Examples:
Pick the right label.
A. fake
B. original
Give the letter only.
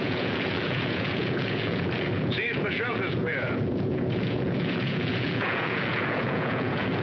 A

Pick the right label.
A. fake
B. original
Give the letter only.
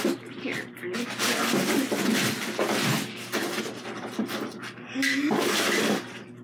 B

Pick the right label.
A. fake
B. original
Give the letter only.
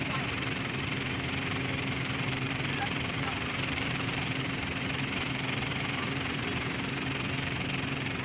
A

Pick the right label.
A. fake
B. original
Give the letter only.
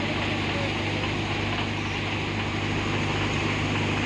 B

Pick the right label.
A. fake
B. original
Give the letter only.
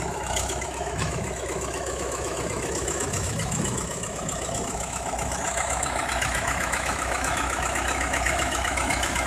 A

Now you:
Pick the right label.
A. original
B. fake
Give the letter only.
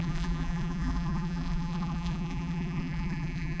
B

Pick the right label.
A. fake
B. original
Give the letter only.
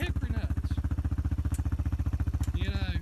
B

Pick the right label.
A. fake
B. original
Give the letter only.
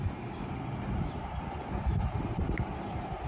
A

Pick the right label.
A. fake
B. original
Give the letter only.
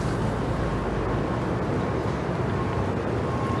B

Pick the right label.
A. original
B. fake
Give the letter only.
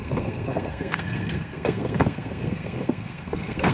B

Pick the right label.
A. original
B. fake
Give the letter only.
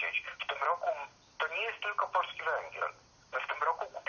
A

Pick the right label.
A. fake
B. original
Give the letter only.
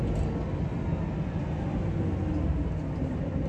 B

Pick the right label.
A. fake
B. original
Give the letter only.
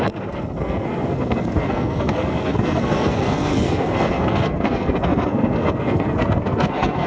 A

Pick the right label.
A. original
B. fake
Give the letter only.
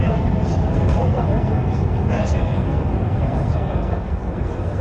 B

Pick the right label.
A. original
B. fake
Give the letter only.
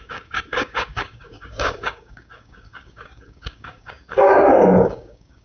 B